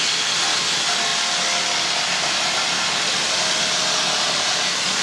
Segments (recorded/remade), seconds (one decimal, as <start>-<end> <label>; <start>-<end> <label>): 0.0-5.0 recorded